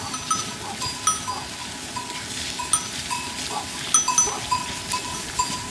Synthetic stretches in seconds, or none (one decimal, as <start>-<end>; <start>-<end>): none